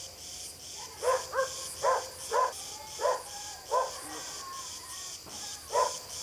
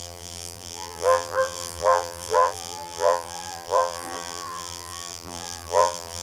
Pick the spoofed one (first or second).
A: second